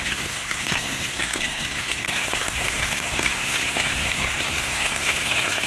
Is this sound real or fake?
fake